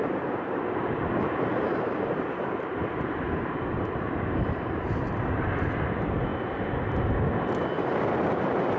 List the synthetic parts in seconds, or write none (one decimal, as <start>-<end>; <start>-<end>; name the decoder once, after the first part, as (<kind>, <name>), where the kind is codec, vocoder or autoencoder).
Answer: 0.0-6.3 (vocoder, BigVGAN v2); 7.8-8.8